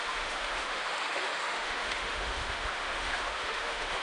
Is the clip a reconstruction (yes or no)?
yes